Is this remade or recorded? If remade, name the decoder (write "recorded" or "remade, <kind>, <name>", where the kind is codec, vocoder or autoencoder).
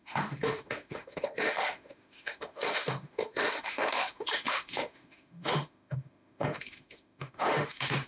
remade, autoencoder, DAC-VAE